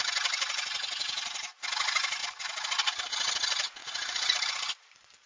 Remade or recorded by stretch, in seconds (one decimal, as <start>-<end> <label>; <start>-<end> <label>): 0.0-3.8 recorded; 3.8-5.3 remade